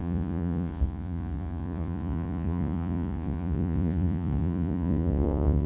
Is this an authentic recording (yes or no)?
no